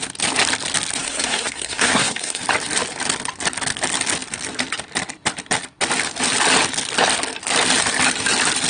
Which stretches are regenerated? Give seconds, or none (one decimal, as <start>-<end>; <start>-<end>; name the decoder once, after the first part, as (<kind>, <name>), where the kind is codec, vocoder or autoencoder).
1.0-2.4 (codec, SNAC)